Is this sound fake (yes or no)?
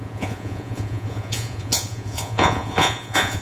yes